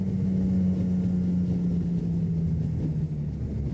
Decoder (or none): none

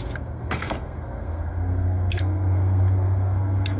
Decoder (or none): codec, SNAC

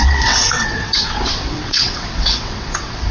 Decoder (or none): vocoder, WaveNeXt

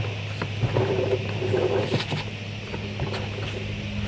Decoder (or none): none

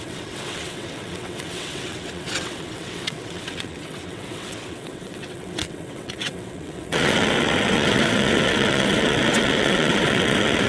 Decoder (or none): vocoder, WaveNeXt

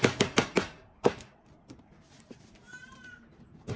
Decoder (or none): vocoder, BigVGAN v2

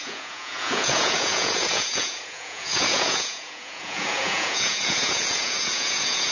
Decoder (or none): vocoder, Vocos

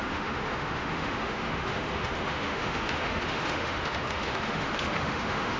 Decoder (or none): autoencoder, DAC-VAE